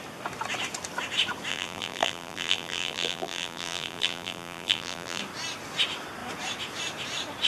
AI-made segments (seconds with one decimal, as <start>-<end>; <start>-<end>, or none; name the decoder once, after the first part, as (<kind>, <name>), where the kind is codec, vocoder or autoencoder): 1.5-5.2 (vocoder, BigVGAN v2)